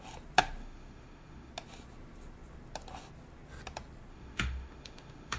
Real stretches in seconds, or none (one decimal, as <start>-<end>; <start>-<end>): 0.0-0.6; 1.5-4.1